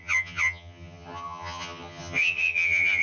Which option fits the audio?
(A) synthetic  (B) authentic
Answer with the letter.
A